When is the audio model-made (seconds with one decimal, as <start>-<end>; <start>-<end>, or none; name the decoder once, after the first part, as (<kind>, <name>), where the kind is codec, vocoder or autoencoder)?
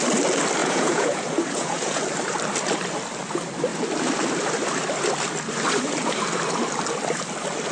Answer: 0.6-2.0 (vocoder, Vocos)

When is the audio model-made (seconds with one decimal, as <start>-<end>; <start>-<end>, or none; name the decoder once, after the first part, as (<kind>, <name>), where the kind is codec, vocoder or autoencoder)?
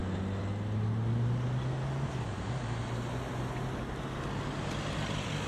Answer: none